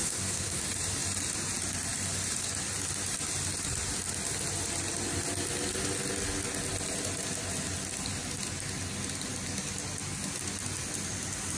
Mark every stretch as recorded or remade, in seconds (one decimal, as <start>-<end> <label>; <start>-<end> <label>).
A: 0.0-0.6 remade; 0.6-11.6 recorded